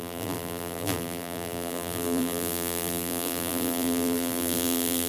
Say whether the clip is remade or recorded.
remade